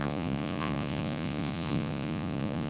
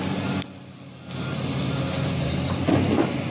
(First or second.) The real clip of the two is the second